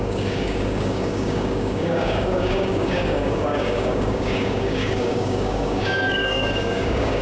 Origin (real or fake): fake